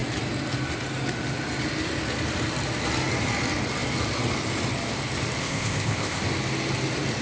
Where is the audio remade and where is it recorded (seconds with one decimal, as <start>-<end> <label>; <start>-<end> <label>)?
0.0-5.4 recorded; 5.4-6.2 remade; 6.2-7.2 recorded